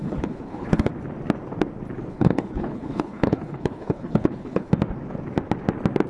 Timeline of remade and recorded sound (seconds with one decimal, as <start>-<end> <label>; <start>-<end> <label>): 0.0-0.9 remade; 0.9-2.1 recorded; 2.1-4.7 remade; 4.7-6.1 recorded